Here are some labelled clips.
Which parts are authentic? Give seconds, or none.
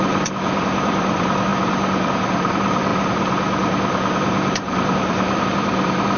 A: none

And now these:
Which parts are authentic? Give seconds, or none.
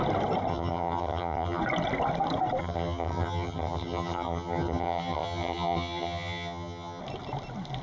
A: 0.0-0.5; 1.6-2.6; 7.0-7.8